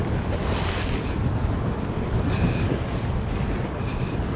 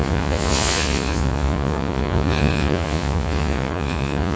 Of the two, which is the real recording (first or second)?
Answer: first